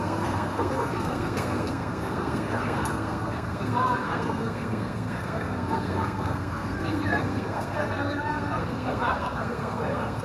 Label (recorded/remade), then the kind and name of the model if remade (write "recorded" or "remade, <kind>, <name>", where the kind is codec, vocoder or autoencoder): remade, codec, SNAC